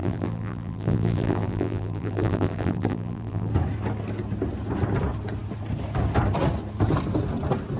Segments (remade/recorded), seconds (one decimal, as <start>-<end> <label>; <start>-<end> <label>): 0.0-3.5 remade; 3.5-7.8 recorded